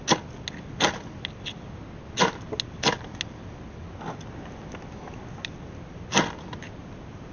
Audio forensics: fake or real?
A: real